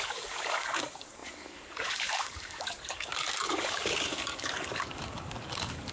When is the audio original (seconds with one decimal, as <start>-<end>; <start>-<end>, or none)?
none